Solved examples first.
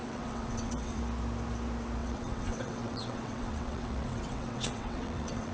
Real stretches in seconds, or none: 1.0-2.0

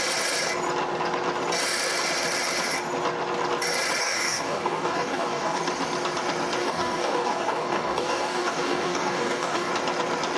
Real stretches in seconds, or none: 0.0-4.0; 5.6-6.6; 9.7-10.4

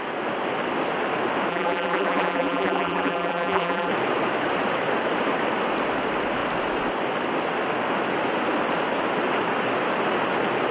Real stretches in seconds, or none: 0.0-1.5; 3.9-10.7

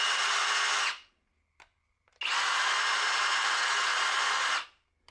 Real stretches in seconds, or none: 0.4-3.5; 3.9-5.1

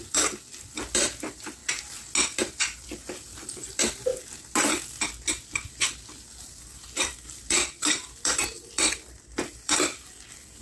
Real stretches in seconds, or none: 1.6-2.4; 4.1-6.3